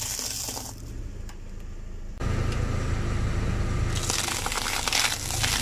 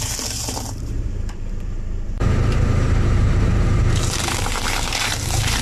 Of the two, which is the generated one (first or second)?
second